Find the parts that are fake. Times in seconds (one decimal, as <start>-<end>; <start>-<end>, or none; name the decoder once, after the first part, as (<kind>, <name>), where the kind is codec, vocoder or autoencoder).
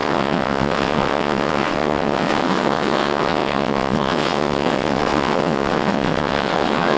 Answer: 0.0-7.0 (vocoder, WaveNeXt)